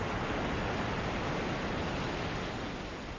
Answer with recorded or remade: recorded